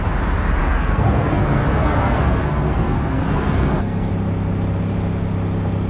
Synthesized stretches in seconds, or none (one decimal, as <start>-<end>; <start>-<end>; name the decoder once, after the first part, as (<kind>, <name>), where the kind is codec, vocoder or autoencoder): 0.6-4.1 (codec, SNAC)